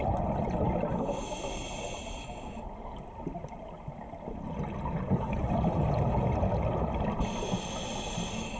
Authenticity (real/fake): real